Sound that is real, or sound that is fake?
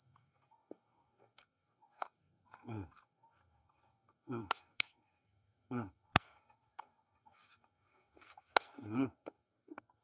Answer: fake